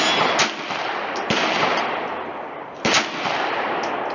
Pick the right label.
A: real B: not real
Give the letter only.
A